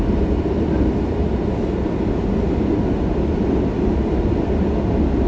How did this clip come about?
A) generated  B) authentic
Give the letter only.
B